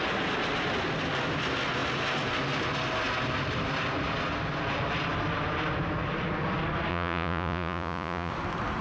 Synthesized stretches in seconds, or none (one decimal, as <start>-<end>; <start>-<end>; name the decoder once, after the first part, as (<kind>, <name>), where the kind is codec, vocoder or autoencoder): 6.9-8.3 (vocoder, Vocos)

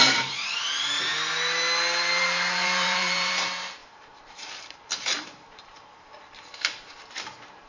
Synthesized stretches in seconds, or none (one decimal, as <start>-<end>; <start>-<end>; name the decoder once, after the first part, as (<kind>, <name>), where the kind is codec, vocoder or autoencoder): 0.0-1.1 (vocoder, BigVGAN v2); 2.2-7.7

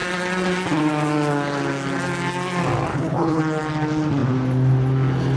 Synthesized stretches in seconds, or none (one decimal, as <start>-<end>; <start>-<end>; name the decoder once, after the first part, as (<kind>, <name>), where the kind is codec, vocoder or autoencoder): 2.9-3.4 (codec, HILCodec)

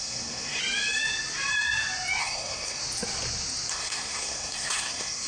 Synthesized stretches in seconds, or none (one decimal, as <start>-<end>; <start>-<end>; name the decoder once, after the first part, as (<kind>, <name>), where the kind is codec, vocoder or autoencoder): 0.0-0.6 (codec, SNAC); 2.2-2.8; 3.7-5.3

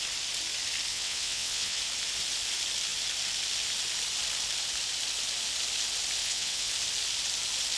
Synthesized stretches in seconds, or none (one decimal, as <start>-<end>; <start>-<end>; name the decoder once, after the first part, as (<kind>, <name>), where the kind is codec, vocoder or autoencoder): 0.9-1.8 (vocoder, WaveNeXt); 6.2-6.7

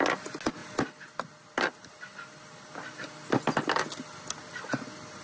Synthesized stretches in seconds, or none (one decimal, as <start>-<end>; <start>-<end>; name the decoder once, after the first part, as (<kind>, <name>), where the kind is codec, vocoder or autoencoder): none